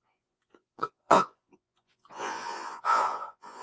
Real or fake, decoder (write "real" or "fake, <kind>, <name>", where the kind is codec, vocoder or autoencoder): fake, vocoder, Vocos